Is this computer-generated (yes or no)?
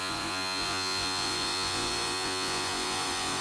yes